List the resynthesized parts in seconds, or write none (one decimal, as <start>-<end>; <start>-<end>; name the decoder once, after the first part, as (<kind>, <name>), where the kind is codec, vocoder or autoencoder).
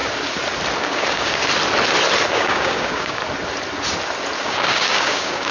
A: 0.8-1.4 (codec, DAC); 2.3-3.2; 4.4-5.5